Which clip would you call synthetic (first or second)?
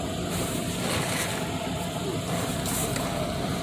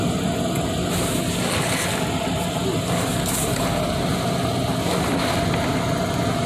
first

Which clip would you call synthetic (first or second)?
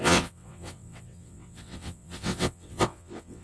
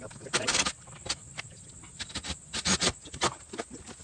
first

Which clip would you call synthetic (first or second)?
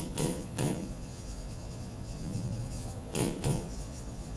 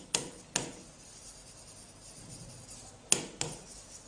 first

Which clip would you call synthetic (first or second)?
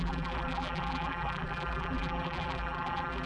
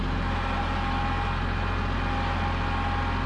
first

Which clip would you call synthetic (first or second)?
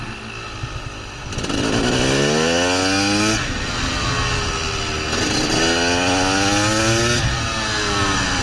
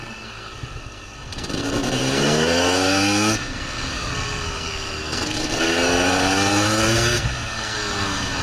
second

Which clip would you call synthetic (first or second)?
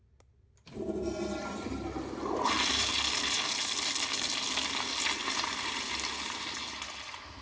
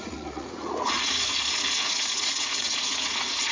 second